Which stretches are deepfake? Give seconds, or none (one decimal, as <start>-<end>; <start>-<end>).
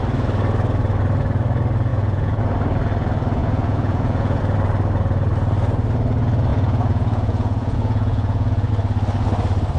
1.9-2.4; 3.4-4.4; 6.5-8.7